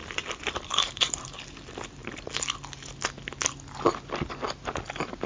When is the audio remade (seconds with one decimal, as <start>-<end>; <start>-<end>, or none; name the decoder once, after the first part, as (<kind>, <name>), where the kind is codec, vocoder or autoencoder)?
0.0-2.0 (vocoder, BigVGAN v2)